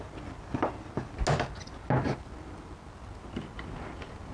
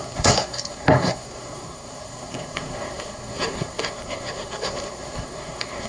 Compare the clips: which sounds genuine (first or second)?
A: first